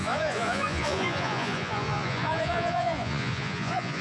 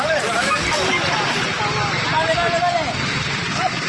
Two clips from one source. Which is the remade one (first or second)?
first